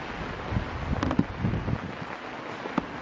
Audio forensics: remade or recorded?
recorded